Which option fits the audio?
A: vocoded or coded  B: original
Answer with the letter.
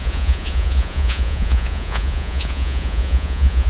A